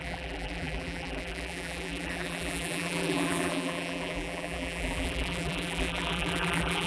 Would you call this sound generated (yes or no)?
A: yes